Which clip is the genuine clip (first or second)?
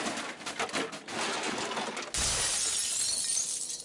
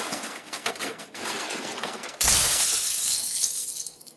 first